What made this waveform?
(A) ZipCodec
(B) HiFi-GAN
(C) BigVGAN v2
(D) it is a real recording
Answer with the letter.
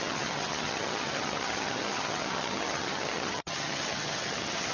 B